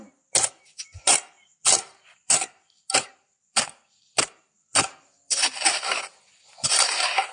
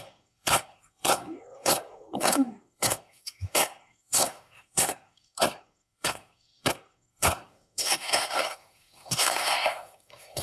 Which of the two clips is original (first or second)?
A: first